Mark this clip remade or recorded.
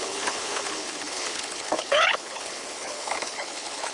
remade